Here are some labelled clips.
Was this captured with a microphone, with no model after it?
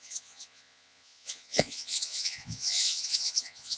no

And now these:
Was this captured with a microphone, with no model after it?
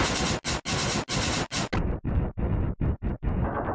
yes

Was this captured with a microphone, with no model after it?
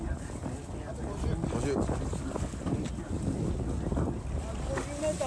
yes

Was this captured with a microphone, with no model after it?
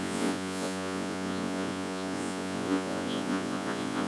no